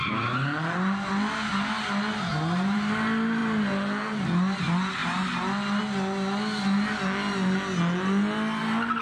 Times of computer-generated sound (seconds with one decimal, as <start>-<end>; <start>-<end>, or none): 2.3-2.9